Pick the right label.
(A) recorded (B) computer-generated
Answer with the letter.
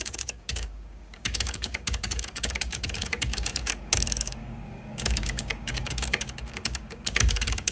B